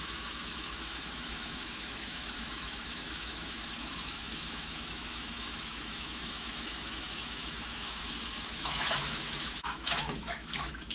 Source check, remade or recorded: remade